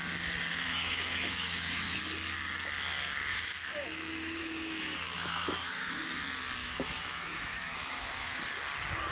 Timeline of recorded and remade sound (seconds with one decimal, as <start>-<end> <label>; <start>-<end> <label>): 0.0-0.5 recorded; 0.5-2.0 remade; 2.0-3.3 recorded; 3.3-6.0 remade; 6.0-6.6 recorded; 6.6-8.4 remade; 8.4-9.1 recorded